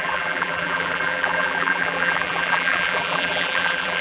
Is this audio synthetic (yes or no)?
yes